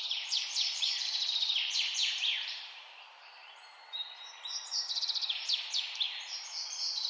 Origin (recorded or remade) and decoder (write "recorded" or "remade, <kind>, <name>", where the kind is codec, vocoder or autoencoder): remade, vocoder, BigVGAN v2